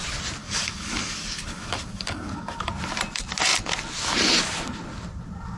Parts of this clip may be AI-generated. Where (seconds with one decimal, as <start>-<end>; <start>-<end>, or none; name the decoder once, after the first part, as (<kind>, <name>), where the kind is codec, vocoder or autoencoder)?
0.4-2.7 (codec, DAC)